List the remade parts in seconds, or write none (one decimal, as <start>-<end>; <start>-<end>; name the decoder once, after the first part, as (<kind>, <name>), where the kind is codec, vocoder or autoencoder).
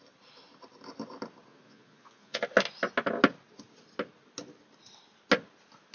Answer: 1.5-2.4 (vocoder, Vocos)